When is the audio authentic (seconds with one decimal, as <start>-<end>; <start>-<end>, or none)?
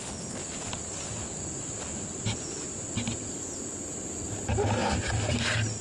0.0-5.8